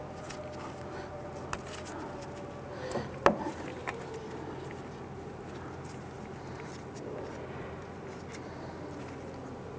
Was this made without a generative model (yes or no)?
yes